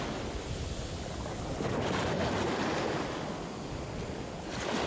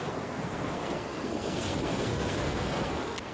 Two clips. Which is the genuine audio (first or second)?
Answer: first